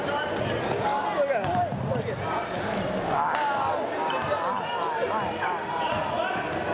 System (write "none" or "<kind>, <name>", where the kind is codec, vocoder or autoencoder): none